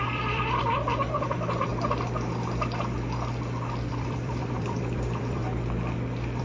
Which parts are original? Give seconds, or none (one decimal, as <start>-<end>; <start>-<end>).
1.7-3.9; 5.4-6.4